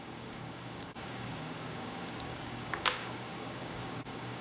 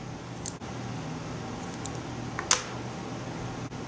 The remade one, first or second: first